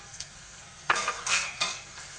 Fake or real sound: fake